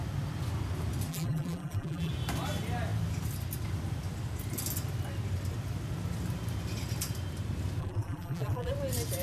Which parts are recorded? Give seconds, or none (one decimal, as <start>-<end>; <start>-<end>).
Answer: 0.0-1.1; 2.1-7.8; 8.7-9.2